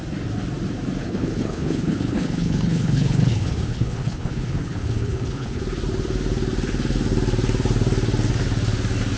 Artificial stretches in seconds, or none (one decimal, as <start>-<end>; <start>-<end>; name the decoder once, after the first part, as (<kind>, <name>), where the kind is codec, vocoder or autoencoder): 1.0-5.6 (codec, HILCodec)